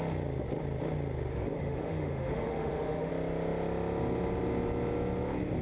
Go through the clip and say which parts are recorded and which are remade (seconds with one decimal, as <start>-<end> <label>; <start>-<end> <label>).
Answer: 0.0-1.3 recorded; 1.3-3.1 remade; 3.1-5.6 recorded

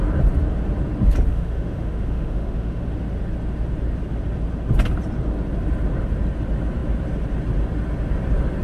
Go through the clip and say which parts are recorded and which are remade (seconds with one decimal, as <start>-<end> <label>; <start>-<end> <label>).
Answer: 0.0-1.3 recorded; 1.3-2.8 remade; 2.8-8.6 recorded

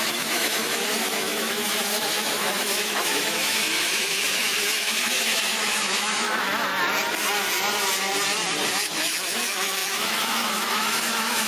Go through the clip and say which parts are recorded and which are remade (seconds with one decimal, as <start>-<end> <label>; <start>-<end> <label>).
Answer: 0.0-6.7 remade; 6.7-8.7 recorded; 8.7-11.5 remade

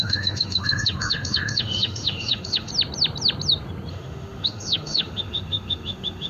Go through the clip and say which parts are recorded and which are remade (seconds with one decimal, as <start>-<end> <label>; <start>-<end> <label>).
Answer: 0.0-2.7 remade; 2.7-3.9 recorded; 3.9-6.3 remade